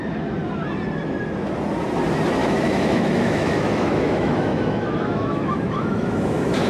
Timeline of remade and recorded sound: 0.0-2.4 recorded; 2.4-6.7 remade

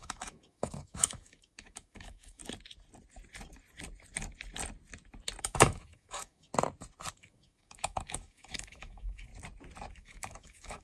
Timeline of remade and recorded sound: 0.0-2.4 remade; 2.4-5.4 recorded; 5.4-6.5 remade; 6.5-7.1 recorded; 7.1-9.3 remade; 9.3-9.9 recorded; 9.9-10.8 remade

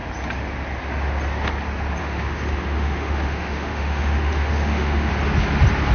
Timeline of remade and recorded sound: 0.0-2.0 recorded; 2.0-5.1 remade; 5.1-5.9 recorded

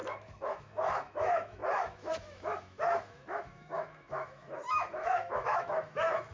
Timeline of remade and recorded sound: 0.0-6.3 remade

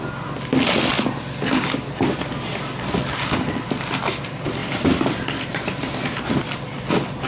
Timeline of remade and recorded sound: 0.0-7.3 recorded